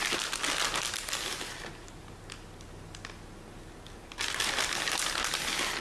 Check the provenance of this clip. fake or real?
real